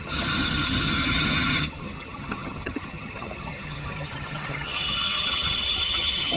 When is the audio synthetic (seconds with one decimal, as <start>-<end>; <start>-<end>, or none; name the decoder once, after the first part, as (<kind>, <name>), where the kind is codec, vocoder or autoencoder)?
0.0-6.4 (vocoder, HiFi-GAN)